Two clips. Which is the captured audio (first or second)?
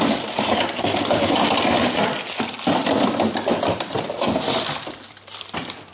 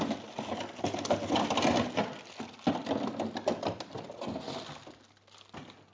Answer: second